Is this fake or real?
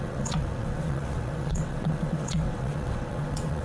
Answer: fake